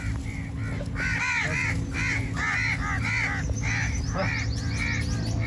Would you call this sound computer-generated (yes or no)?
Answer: no